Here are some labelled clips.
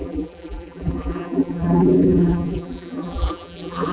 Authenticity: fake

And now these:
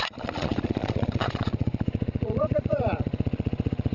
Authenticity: fake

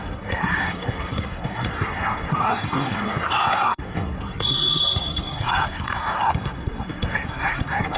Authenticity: fake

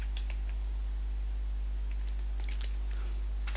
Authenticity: real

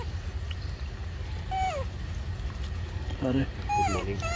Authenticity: real